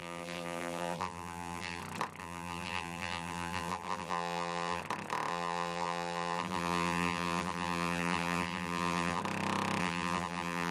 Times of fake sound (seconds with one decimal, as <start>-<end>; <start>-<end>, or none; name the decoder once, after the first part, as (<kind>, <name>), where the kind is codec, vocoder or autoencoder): 0.0-1.8 (vocoder, BigVGAN v2); 2.2-4.8; 5.3-9.2; 9.8-10.7